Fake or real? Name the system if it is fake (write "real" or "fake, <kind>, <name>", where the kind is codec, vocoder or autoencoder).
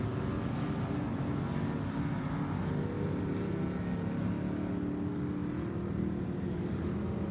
real